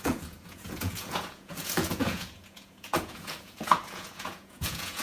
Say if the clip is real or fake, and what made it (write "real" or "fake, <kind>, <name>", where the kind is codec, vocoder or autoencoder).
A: fake, vocoder, Vocos